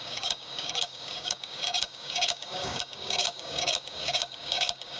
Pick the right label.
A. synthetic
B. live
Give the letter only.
A